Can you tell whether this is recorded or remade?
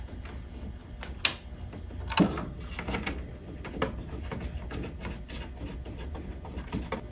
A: recorded